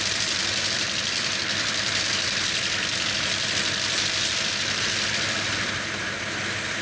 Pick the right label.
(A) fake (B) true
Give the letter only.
A